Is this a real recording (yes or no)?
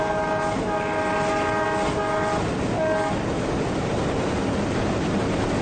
yes